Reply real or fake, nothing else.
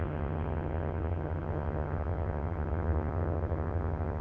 fake